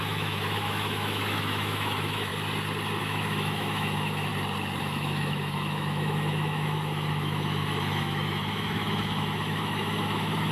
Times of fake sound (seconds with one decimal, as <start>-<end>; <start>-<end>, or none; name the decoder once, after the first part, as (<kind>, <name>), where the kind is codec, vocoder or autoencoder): 0.0-2.3 (autoencoder, DAC-VAE); 3.0-4.3; 4.8-10.5

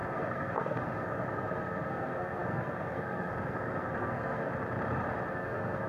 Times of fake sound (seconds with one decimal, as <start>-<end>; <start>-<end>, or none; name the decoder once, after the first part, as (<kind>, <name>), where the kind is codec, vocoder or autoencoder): 0.0-4.5 (codec, SNAC); 5.3-5.9

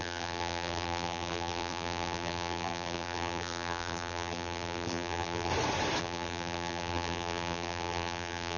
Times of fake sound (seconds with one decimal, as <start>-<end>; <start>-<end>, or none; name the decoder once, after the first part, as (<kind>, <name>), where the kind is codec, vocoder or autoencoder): 0.0-5.5 (vocoder, BigVGAN v2); 6.0-8.6

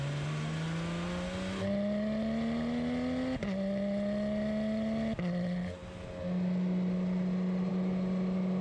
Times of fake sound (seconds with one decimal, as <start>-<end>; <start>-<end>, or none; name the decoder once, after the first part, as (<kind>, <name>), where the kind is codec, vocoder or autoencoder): none

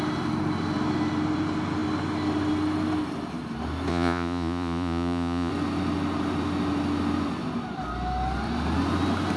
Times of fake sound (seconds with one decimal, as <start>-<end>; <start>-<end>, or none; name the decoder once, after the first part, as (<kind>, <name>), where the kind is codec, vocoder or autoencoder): 3.9-5.5 (vocoder, Vocos)

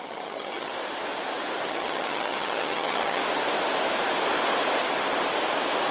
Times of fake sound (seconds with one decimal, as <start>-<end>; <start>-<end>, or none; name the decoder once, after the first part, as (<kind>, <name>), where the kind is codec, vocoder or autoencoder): 0.0-0.7 (vocoder, HiFi-GAN); 1.7-3.2